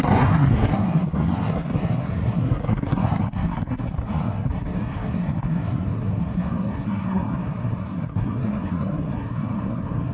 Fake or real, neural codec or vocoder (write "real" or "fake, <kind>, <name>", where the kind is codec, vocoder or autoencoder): fake, codec, SNAC